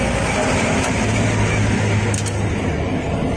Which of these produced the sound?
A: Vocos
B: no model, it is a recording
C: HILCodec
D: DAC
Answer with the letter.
B